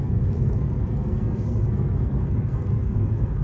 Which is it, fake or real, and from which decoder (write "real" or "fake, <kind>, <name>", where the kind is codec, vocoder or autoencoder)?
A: fake, codec, SNAC